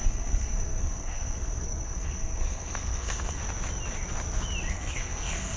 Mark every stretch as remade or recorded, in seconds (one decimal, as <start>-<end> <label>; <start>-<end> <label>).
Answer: 0.0-3.4 remade; 3.4-4.7 recorded; 4.7-5.6 remade